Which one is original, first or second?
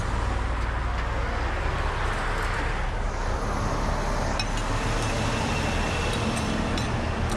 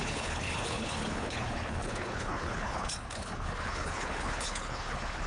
first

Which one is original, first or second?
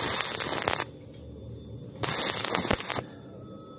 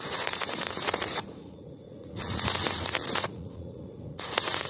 first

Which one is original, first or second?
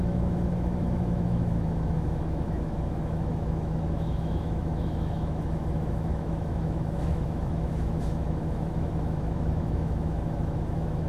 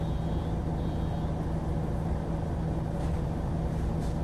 second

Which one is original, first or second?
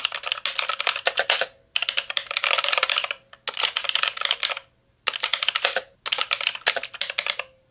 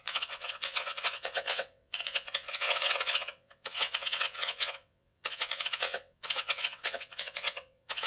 first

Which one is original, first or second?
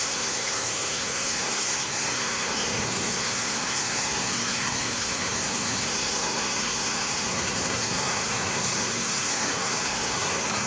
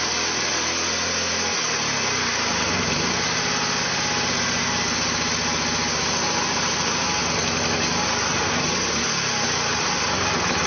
second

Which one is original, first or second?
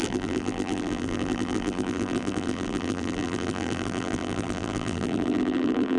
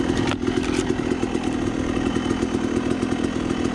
second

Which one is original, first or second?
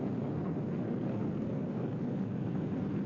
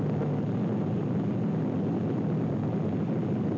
second